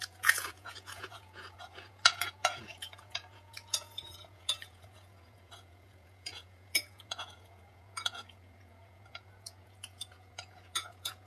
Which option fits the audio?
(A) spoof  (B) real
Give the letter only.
A